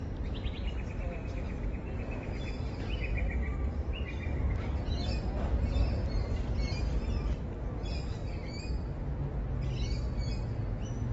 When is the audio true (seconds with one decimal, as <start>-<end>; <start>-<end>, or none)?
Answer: 0.0-1.8; 4.5-8.2; 9.0-11.1